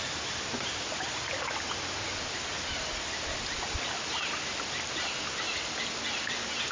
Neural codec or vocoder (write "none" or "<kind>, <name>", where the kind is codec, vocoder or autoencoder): none